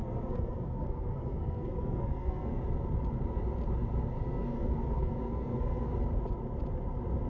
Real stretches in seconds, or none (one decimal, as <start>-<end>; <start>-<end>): 2.6-4.1; 5.9-7.3